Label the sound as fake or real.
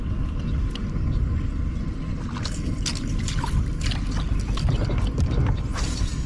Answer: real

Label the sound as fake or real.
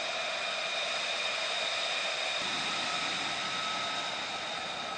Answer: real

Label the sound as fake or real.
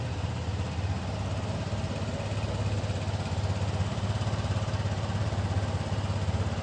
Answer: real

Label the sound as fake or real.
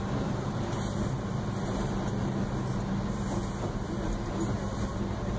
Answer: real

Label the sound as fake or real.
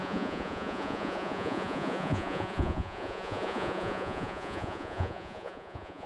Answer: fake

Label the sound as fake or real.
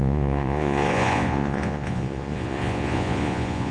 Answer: fake